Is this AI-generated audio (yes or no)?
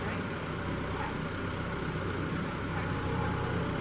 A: no